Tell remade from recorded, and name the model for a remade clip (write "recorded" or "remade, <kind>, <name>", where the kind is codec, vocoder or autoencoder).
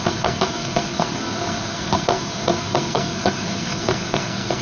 remade, codec, SNAC